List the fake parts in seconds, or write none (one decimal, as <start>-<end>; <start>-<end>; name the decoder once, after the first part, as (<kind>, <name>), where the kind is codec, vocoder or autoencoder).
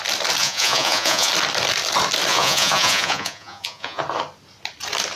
0.4-1.3 (vocoder, Vocos); 2.3-4.0